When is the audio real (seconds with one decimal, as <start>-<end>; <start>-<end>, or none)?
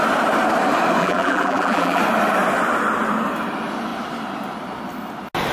0.0-1.0; 2.0-5.5